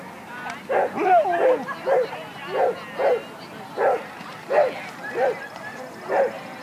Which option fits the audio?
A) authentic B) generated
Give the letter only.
A